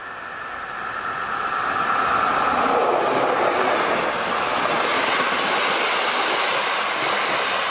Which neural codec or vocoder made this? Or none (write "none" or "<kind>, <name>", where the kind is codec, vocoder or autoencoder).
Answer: none